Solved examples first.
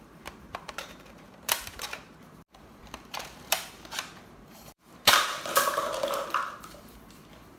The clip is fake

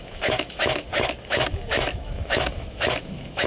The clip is fake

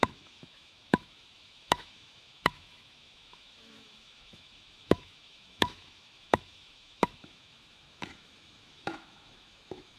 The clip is fake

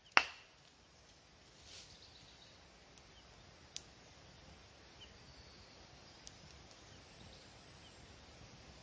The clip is real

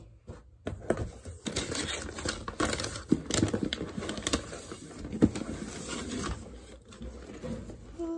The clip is real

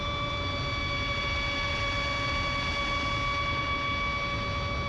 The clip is real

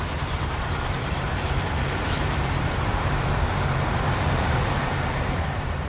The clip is fake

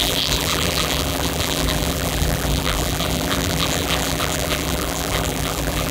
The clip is fake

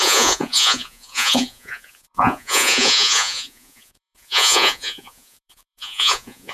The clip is fake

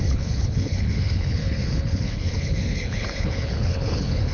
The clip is fake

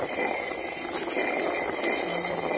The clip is real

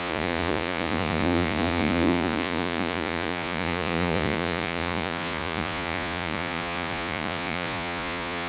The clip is fake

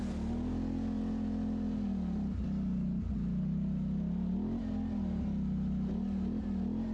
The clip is real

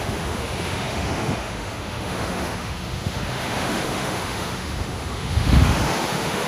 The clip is fake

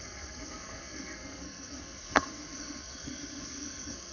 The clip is fake